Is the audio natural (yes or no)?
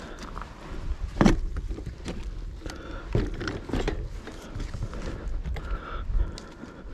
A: yes